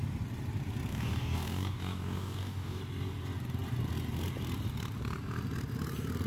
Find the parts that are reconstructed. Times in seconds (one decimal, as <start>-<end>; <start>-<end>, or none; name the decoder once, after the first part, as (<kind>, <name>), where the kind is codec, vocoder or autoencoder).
0.9-2.8 (codec, DAC)